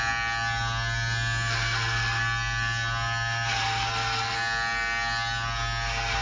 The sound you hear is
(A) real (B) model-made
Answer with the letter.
A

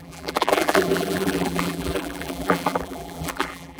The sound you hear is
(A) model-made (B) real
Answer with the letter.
A